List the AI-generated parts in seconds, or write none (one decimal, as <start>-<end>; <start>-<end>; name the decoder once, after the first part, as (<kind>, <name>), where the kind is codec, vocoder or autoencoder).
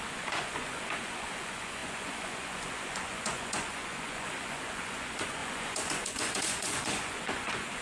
0.0-7.8 (vocoder, Vocos)